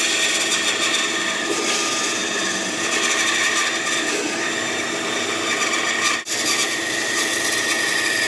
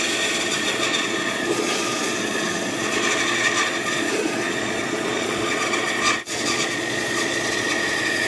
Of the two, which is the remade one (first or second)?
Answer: second